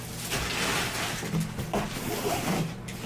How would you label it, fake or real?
real